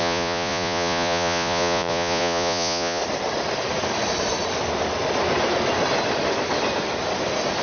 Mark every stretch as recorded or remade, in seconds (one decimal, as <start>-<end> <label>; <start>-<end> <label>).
0.0-3.0 remade; 3.0-7.6 recorded